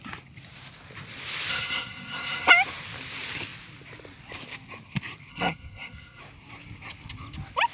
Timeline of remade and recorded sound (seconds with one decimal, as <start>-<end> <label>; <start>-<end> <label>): 0.0-1.5 recorded; 1.5-2.5 remade; 2.5-5.3 recorded; 5.3-6.2 remade; 6.2-7.7 recorded